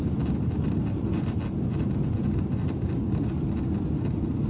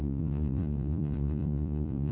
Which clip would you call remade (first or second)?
second